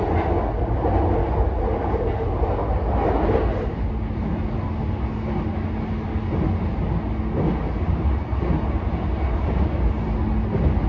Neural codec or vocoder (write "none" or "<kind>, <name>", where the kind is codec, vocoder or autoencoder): none